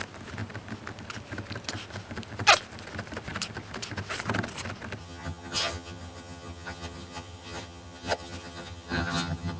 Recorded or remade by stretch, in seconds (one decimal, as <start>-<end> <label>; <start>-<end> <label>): 0.0-5.0 recorded; 5.0-9.6 remade